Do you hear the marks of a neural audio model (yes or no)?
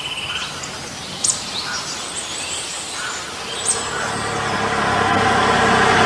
no